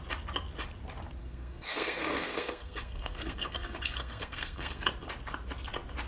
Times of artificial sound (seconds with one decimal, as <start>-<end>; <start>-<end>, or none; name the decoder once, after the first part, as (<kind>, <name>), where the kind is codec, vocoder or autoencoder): 1.2-4.9 (codec, SNAC)